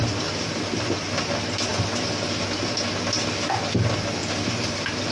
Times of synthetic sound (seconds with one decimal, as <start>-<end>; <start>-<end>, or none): none

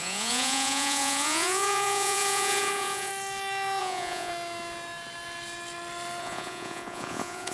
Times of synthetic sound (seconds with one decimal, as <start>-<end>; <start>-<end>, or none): 0.0-3.1; 3.8-4.3; 6.2-7.5

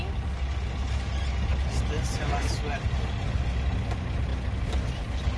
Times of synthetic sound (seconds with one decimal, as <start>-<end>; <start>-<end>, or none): none

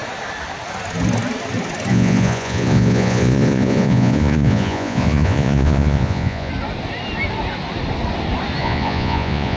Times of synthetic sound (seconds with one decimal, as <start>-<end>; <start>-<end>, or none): 1.9-6.5; 8.6-9.6

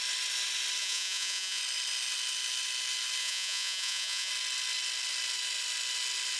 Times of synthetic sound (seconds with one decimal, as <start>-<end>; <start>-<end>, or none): 0.8-1.6; 3.2-4.3

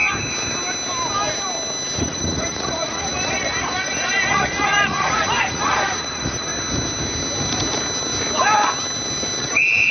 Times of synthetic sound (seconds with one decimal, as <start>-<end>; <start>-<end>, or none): 2.0-6.5; 9.4-9.9

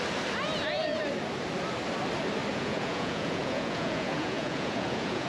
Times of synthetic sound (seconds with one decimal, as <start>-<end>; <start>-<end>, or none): 2.5-5.3

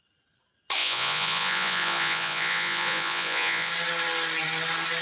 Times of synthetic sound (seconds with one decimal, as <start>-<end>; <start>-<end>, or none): 0.8-3.7